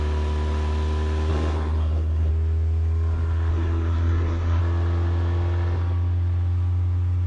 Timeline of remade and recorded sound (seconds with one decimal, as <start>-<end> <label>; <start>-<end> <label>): 0.0-1.3 recorded; 1.3-2.3 remade; 2.3-3.5 recorded; 3.5-4.6 remade; 4.6-7.3 recorded